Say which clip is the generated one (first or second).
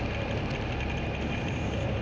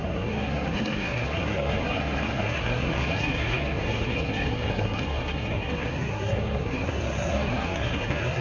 second